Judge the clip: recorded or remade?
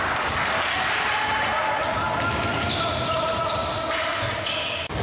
recorded